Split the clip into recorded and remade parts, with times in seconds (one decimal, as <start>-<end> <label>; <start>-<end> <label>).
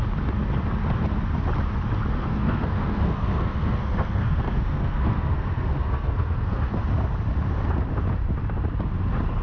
0.0-2.1 recorded; 2.1-6.6 remade; 6.6-9.4 recorded